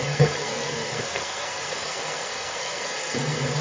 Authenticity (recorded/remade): remade